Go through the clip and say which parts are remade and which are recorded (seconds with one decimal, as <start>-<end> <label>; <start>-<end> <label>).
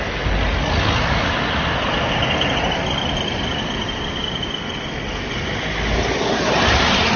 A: 0.0-7.2 recorded